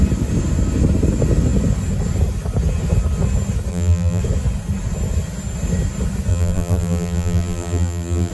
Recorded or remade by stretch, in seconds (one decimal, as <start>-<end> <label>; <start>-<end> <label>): 0.0-3.7 recorded; 3.7-4.2 remade; 4.2-6.3 recorded; 6.3-8.3 remade